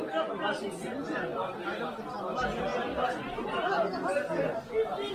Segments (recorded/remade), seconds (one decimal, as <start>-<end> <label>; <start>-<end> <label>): 0.0-5.1 recorded